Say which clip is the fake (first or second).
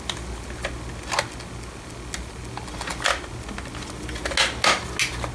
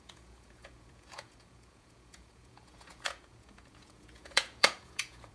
second